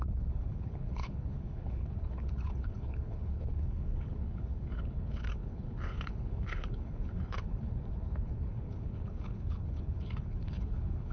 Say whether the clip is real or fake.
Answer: fake